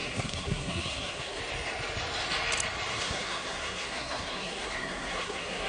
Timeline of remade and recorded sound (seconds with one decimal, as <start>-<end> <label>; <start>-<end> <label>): 0.0-1.4 remade; 1.4-2.9 recorded; 2.9-5.7 remade